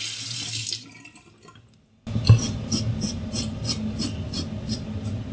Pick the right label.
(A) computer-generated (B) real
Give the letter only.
B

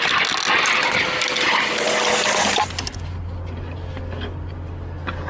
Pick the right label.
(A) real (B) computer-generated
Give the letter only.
A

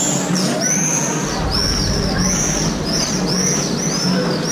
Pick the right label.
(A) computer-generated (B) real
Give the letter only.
B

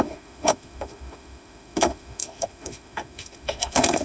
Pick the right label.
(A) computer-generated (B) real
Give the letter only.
A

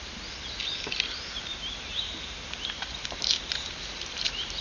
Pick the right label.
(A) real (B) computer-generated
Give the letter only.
B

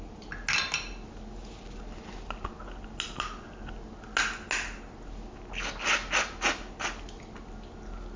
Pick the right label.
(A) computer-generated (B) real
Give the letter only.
B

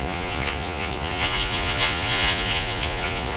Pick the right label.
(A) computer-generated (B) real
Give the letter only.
A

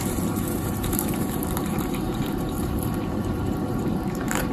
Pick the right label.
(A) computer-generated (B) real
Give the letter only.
A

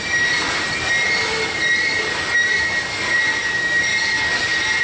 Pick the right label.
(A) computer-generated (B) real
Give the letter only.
B